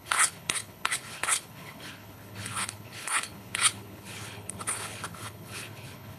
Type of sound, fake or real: fake